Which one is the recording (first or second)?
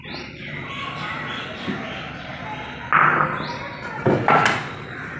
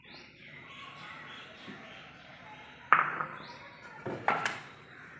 first